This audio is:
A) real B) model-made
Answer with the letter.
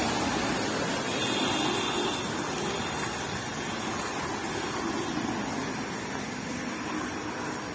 A